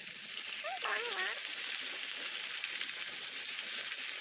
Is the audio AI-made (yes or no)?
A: no